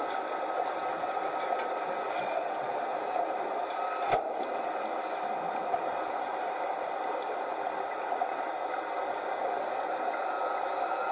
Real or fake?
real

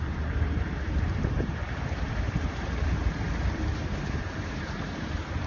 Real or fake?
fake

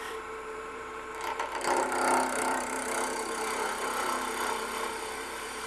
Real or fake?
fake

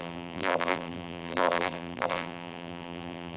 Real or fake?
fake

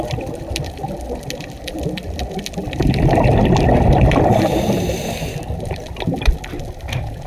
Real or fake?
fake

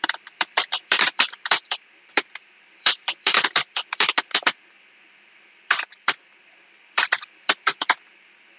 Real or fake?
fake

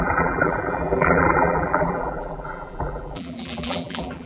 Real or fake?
fake